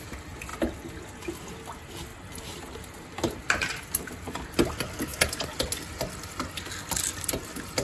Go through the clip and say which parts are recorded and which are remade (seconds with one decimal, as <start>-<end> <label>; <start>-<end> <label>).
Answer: 0.0-7.8 recorded